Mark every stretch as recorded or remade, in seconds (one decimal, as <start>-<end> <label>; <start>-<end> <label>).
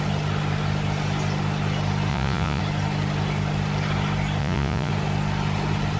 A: 0.0-2.1 recorded; 2.1-2.6 remade; 2.6-4.4 recorded; 4.4-4.9 remade; 4.9-6.0 recorded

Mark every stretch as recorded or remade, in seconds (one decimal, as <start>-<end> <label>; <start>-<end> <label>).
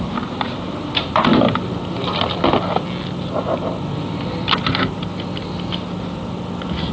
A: 0.0-6.9 recorded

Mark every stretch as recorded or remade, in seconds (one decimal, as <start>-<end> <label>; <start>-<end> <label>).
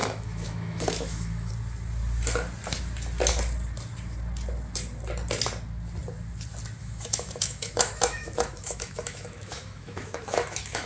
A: 0.0-1.5 remade; 1.5-6.8 recorded; 6.8-10.9 remade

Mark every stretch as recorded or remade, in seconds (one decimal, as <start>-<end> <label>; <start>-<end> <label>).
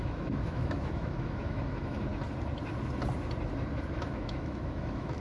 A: 0.0-2.1 remade; 2.1-3.9 recorded; 3.9-5.2 remade